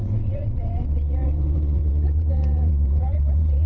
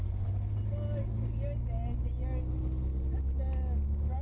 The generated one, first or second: first